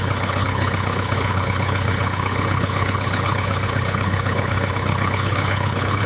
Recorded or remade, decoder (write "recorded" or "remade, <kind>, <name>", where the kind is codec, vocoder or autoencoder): remade, codec, HILCodec